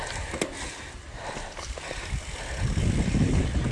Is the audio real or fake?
real